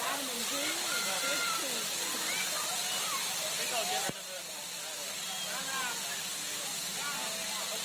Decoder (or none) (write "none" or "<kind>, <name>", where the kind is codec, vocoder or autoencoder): none